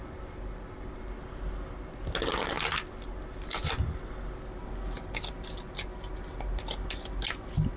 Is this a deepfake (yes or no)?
no